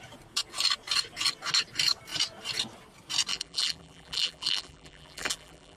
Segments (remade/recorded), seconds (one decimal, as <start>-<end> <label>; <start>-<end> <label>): 0.0-3.3 recorded; 3.3-5.8 remade